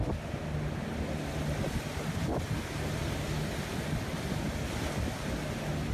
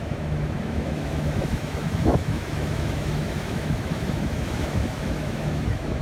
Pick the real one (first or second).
first